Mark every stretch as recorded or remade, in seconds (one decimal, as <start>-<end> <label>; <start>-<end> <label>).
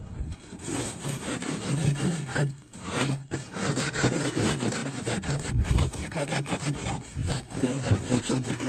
0.0-8.7 remade